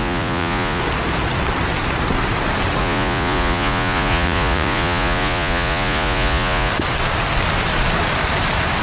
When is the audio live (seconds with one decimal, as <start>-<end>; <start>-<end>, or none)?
0.8-2.8; 6.7-8.8